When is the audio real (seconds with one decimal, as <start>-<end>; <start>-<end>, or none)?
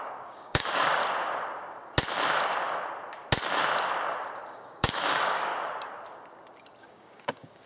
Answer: 1.0-4.5; 5.5-6.8